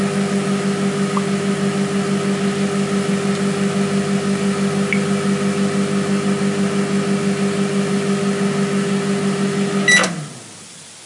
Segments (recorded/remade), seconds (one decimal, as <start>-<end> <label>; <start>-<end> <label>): 0.0-11.1 recorded